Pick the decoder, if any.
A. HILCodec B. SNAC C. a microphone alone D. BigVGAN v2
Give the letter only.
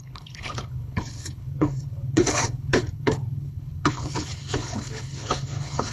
A